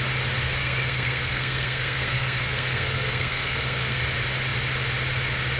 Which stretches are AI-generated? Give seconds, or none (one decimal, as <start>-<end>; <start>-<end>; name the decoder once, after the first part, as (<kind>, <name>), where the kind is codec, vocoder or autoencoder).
0.6-4.0 (codec, SNAC)